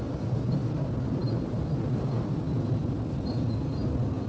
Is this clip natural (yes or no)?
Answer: yes